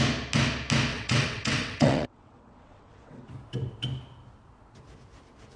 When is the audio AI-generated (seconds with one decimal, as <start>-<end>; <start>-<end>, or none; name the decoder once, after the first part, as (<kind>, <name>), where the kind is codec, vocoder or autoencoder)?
0.9-3.3 (vocoder, WaveNeXt)